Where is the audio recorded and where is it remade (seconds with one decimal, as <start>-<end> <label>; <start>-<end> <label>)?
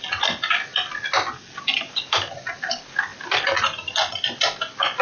0.0-5.0 recorded